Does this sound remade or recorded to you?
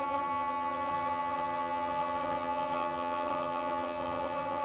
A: remade